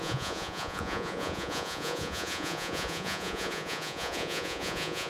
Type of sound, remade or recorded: remade